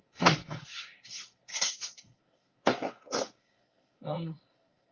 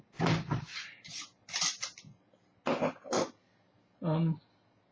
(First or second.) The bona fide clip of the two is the second